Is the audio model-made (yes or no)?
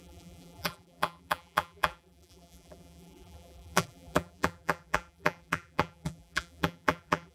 yes